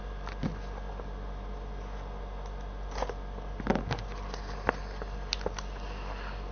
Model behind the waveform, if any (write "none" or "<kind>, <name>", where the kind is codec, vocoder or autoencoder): none